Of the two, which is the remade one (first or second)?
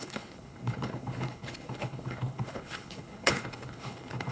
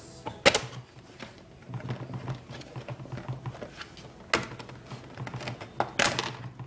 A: first